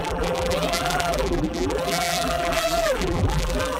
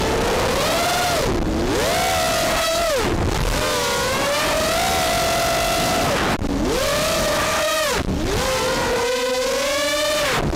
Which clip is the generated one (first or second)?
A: first